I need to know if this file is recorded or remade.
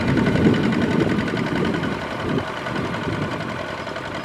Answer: recorded